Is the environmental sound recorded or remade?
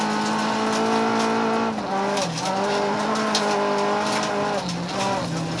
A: recorded